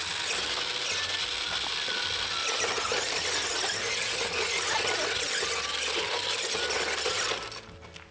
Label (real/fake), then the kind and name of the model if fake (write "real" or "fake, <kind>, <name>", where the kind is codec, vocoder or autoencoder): real